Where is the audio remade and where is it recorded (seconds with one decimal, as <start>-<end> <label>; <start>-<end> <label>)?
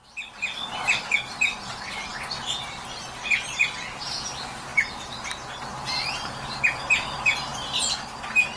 0.0-2.1 remade; 2.1-2.7 recorded; 2.7-4.7 remade; 4.7-6.6 recorded; 6.6-7.5 remade; 7.5-8.6 recorded